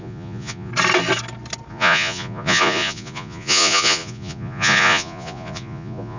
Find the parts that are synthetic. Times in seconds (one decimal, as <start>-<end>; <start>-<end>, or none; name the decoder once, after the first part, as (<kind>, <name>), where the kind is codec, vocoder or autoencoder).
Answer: 0.0-0.7 (vocoder, Vocos); 1.7-6.2